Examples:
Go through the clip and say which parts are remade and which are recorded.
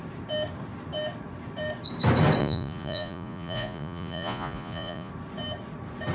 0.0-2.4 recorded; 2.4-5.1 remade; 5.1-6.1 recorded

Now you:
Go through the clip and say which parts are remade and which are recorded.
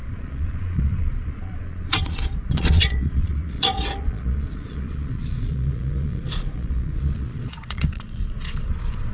0.0-9.1 remade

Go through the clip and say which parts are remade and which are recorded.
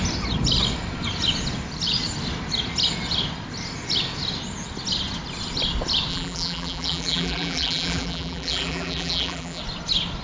0.0-6.1 recorded; 6.1-9.6 remade; 9.6-10.2 recorded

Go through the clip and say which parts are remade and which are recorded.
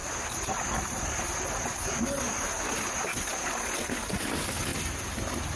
0.0-5.6 recorded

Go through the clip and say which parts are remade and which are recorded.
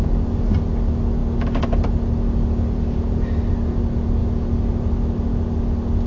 0.0-6.1 recorded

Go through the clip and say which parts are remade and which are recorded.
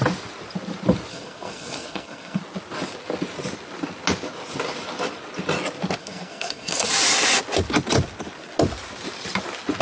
0.0-1.1 recorded; 1.1-2.4 remade; 2.4-6.0 recorded; 6.0-6.9 remade; 6.9-9.8 recorded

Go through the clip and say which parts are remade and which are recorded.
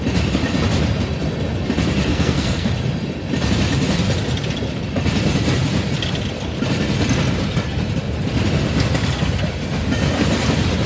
0.0-2.1 recorded; 2.1-2.7 remade; 2.7-10.9 recorded